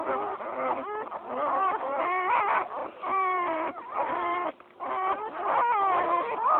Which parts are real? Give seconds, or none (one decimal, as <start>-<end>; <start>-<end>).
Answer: 0.0-1.6; 2.4-2.8; 4.5-6.6